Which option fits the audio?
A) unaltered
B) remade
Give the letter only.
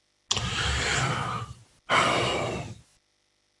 A